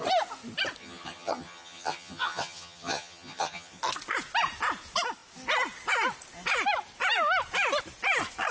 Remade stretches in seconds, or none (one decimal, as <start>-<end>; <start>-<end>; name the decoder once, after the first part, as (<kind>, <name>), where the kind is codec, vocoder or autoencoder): 0.8-3.8 (vocoder, HiFi-GAN)